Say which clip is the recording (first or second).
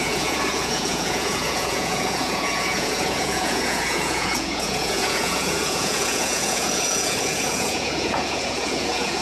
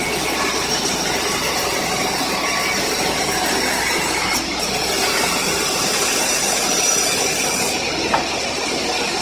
second